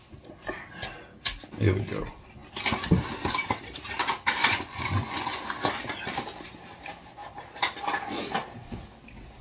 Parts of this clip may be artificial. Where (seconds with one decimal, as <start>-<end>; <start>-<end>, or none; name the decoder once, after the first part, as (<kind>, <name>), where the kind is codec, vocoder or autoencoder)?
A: 4.4-5.4 (vocoder, Vocos)